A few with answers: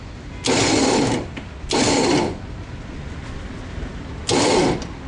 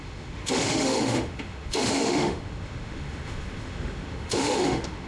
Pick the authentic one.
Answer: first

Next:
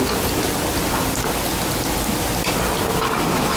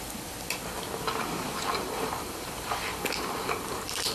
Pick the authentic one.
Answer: first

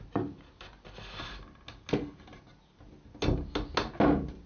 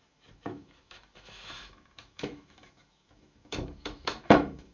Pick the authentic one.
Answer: first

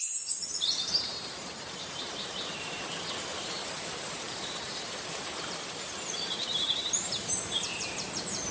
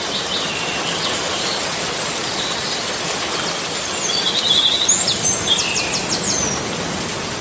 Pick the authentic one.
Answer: second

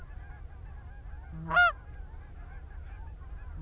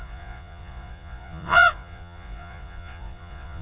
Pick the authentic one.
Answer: first